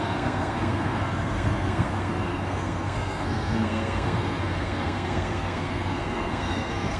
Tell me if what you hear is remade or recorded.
remade